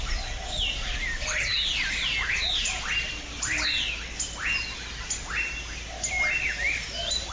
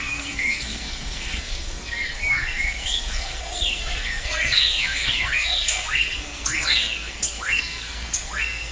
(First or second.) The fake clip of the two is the second